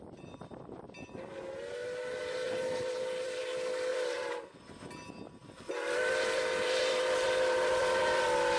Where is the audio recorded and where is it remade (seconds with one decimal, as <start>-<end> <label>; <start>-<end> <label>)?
0.0-2.2 recorded; 2.2-3.4 remade; 3.4-3.9 recorded; 3.9-4.7 remade; 4.7-5.4 recorded; 5.4-8.2 remade; 8.2-8.6 recorded